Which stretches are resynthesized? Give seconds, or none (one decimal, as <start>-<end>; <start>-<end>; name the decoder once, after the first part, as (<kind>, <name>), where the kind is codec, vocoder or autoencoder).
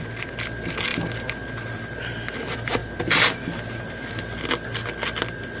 none